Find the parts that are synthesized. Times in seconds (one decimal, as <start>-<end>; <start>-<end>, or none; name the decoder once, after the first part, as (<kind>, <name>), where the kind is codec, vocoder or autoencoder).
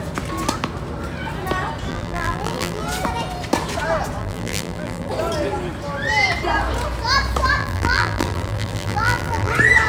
1.9-2.8 (vocoder, BigVGAN v2); 4.2-5.1; 7.6-9.5